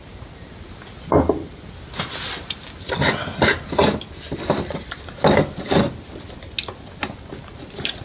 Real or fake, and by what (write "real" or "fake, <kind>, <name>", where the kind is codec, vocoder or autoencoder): real